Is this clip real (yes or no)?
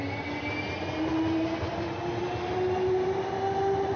yes